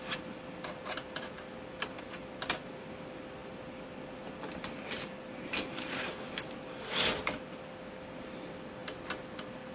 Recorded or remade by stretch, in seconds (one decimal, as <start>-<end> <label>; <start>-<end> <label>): 0.0-9.7 recorded